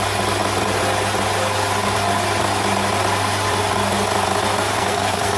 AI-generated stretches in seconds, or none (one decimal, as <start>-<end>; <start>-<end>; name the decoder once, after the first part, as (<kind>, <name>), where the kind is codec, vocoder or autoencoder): 4.7-5.4 (codec, SNAC)